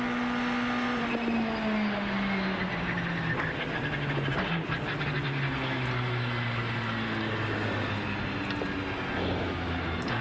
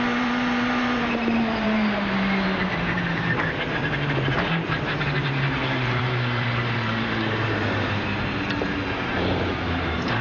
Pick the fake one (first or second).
second